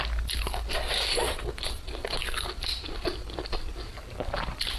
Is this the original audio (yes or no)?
yes